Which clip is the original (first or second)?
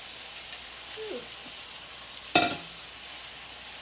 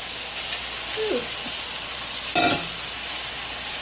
second